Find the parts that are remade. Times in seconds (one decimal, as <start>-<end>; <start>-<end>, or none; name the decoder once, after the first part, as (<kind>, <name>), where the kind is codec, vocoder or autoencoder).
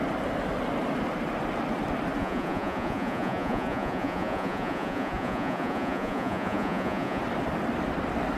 2.2-7.2 (vocoder, Vocos)